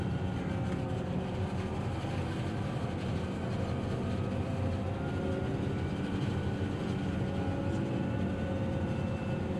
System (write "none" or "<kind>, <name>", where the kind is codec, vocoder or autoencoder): none